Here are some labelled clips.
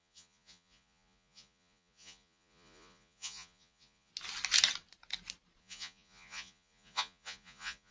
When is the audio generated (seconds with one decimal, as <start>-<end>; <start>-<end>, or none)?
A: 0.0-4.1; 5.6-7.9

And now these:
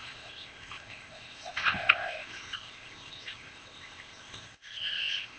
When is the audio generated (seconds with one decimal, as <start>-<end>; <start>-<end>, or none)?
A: 0.0-5.4

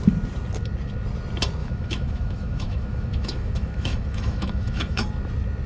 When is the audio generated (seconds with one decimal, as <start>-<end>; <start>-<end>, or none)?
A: 1.6-5.0